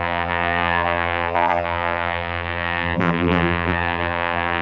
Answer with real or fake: fake